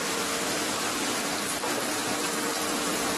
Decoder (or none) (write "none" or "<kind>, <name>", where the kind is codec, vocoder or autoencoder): vocoder, BigVGAN v2